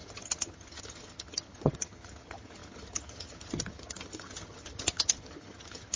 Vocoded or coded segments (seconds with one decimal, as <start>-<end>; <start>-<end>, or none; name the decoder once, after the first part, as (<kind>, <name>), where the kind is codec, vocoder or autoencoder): 0.0-6.0 (vocoder, HiFi-GAN)

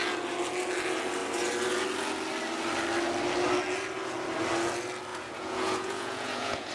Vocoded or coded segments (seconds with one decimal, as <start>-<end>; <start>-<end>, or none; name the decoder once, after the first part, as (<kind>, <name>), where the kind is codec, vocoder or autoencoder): 5.1-6.7 (vocoder, Vocos)

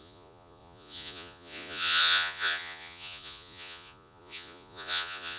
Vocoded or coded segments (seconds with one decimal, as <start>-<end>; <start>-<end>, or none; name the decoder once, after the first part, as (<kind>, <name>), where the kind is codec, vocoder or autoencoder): 0.0-5.4 (vocoder, Vocos)